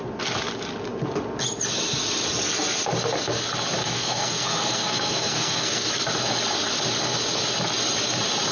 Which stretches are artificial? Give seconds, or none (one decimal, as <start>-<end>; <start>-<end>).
3.8-5.9